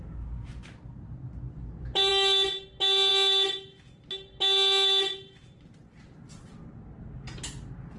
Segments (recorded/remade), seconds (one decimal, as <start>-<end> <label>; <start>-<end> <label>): 0.0-8.0 recorded